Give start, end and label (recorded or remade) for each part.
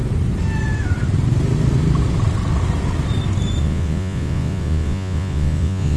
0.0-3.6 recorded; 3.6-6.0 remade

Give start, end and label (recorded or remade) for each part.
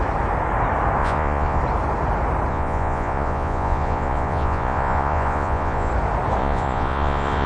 0.0-1.0 recorded; 1.0-1.6 remade; 1.6-2.5 recorded; 2.5-5.9 remade; 5.9-6.4 recorded; 6.4-7.5 remade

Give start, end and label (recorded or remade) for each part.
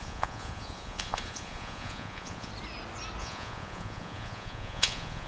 0.0-2.5 remade; 2.5-3.2 recorded; 3.2-5.3 remade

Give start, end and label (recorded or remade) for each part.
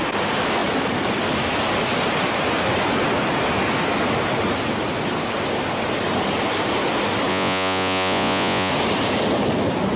0.0-7.3 recorded; 7.3-8.7 remade; 8.7-10.0 recorded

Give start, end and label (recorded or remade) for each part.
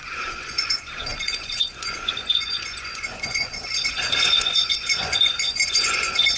0.0-6.4 remade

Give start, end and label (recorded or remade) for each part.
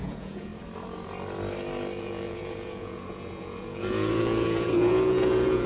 0.0-0.5 remade; 0.5-2.0 recorded; 2.0-5.7 remade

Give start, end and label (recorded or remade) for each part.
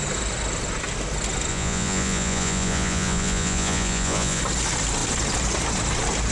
0.0-1.5 recorded; 1.5-4.4 remade; 4.4-6.3 recorded